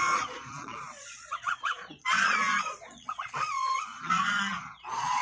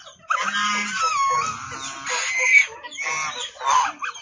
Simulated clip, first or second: first